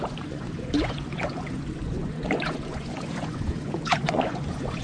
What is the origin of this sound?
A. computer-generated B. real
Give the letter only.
A